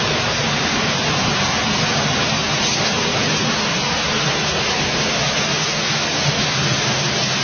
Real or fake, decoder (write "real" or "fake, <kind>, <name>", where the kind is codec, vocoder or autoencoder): real